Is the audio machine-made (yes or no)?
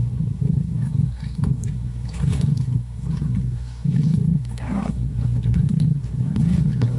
yes